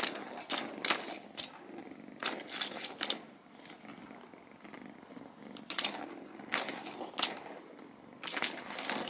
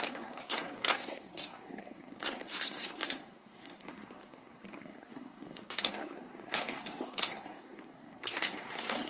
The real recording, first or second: first